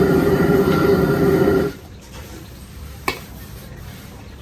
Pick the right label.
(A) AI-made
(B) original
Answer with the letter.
A